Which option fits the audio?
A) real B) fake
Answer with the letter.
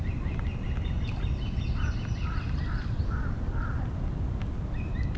A